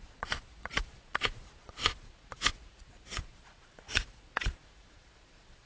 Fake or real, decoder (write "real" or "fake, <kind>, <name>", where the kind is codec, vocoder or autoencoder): fake, vocoder, Vocos